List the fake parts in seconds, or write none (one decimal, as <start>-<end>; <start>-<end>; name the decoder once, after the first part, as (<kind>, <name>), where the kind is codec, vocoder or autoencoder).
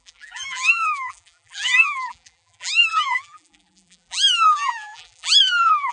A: 0.0-5.9 (vocoder, BigVGAN v2)